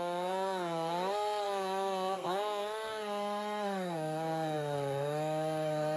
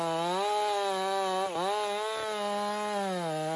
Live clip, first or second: second